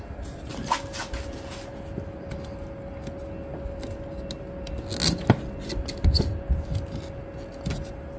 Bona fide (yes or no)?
yes